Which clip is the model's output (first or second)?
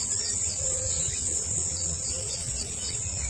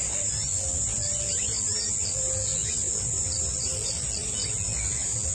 first